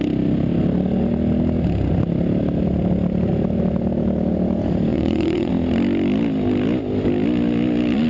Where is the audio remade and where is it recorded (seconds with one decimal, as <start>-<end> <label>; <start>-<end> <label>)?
0.0-4.9 recorded; 4.9-5.5 remade; 5.5-8.1 recorded